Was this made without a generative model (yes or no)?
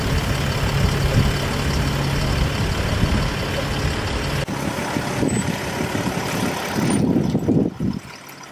yes